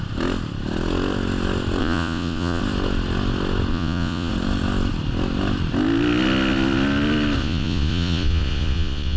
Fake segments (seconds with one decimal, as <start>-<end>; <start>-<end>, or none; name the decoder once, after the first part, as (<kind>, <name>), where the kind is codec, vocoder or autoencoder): 1.8-2.6 (vocoder, Vocos); 3.7-4.3; 7.4-9.2